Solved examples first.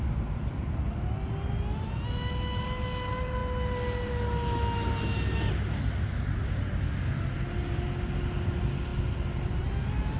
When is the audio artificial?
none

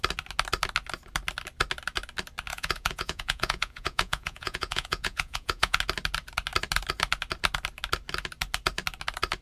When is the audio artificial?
2.5-5.8 (vocoder, Vocos)

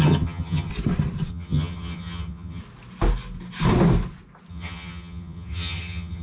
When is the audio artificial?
0.0-0.7 (vocoder, HiFi-GAN); 1.3-2.6; 4.5-6.2

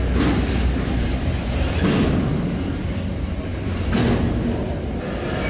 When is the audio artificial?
none

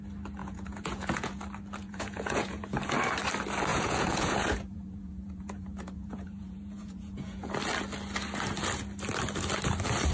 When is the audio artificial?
0.4-1.4 (vocoder, Vocos); 1.8-2.6; 3.7-7.5